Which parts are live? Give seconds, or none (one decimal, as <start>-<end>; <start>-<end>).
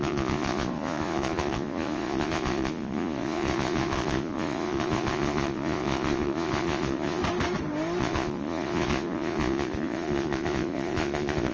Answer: 7.2-8.0